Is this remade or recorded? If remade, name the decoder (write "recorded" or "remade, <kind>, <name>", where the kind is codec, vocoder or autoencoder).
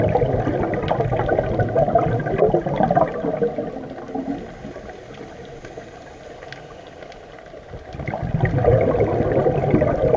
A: recorded